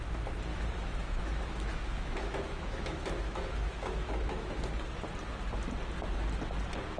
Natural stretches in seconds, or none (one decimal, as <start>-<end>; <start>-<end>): 0.0-0.5; 4.7-7.0